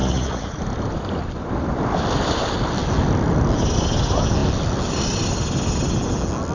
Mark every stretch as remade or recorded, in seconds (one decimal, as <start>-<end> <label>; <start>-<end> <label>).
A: 0.0-0.6 remade; 0.6-6.5 recorded

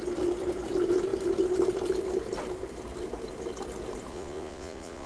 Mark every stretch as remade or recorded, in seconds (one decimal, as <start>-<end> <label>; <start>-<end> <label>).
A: 0.0-4.1 recorded; 4.1-5.1 remade

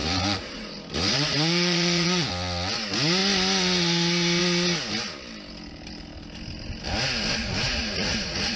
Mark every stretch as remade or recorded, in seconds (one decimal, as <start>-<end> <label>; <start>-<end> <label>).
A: 0.0-2.3 remade; 2.3-7.4 recorded; 7.4-8.6 remade

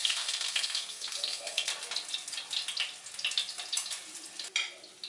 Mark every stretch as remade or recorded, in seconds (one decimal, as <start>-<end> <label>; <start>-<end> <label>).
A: 0.0-1.7 remade; 1.7-5.1 recorded

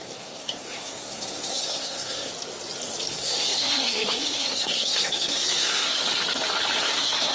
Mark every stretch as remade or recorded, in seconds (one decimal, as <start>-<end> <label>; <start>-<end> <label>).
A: 0.0-2.3 remade; 2.3-3.1 recorded; 3.1-6.0 remade; 6.0-6.8 recorded; 6.8-7.3 remade

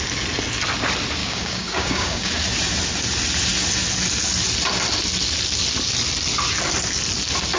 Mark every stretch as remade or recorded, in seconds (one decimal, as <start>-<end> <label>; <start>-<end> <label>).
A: 0.0-1.2 recorded; 1.2-2.3 remade; 2.3-7.6 recorded

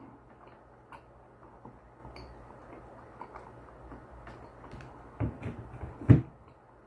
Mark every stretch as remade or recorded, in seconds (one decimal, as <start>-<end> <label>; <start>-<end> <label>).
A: 0.0-6.9 recorded

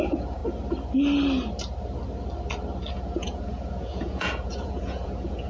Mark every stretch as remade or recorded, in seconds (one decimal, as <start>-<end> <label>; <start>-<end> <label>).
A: 0.0-0.4 remade; 0.4-2.9 recorded; 2.9-5.5 remade